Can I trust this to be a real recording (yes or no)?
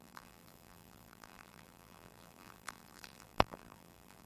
no